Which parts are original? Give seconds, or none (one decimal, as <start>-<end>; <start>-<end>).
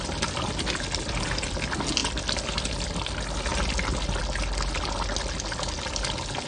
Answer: 0.0-6.5